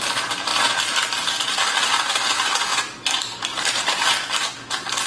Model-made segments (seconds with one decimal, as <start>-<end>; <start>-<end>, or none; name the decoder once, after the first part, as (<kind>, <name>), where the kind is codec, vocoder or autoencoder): none